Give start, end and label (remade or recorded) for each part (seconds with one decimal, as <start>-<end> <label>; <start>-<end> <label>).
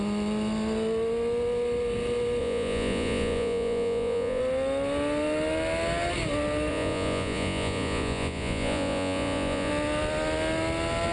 0.0-2.4 recorded; 2.4-4.4 remade; 4.4-6.7 recorded; 6.7-9.7 remade; 9.7-11.1 recorded